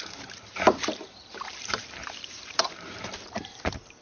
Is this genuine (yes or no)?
no